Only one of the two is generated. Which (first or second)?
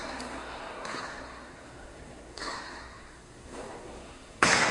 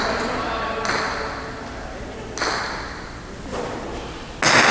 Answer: first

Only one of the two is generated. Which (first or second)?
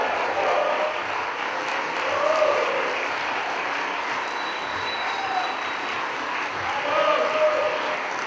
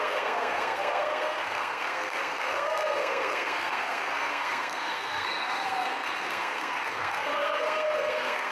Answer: second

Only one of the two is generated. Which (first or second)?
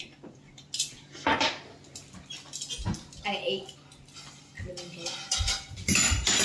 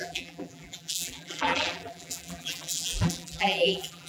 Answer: second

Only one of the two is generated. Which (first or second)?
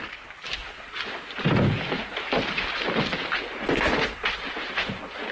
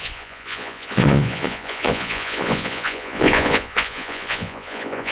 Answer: second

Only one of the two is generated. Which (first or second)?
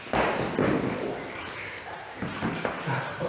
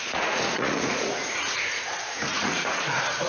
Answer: second